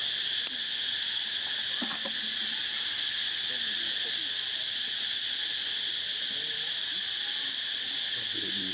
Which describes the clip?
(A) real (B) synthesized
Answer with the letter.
A